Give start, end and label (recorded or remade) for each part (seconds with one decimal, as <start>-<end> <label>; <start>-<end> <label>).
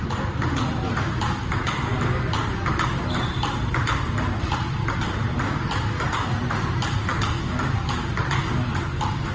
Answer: 0.0-9.3 recorded